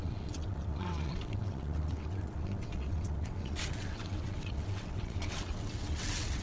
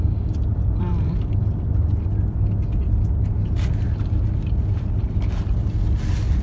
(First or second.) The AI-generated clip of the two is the first